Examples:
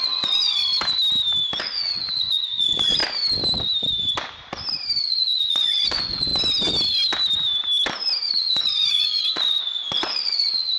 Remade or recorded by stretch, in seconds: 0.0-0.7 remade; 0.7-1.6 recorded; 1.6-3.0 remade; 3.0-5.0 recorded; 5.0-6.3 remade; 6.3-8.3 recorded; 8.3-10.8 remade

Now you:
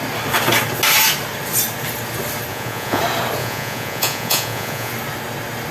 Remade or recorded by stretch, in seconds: 0.0-2.5 recorded; 2.5-3.0 remade; 3.0-3.4 recorded; 3.4-4.9 remade; 4.9-5.7 recorded

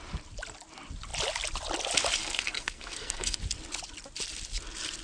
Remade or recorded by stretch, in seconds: 0.0-2.2 recorded; 2.2-3.4 remade; 3.4-5.0 recorded